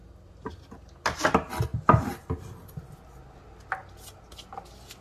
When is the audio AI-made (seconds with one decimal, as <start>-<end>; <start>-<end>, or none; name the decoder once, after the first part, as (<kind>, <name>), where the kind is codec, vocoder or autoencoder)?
0.0-0.5 (vocoder, BigVGAN v2)